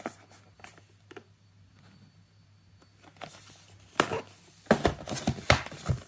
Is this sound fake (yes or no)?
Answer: no